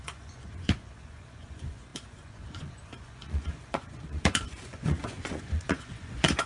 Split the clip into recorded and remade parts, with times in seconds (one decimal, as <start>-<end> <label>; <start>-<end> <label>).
0.0-6.5 remade